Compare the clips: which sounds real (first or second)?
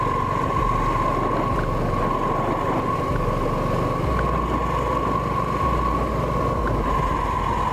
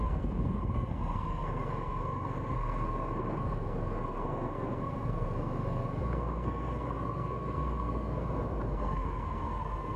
first